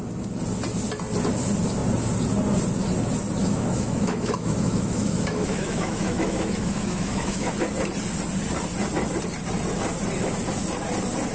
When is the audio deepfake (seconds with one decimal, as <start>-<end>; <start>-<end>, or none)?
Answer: 3.4-7.5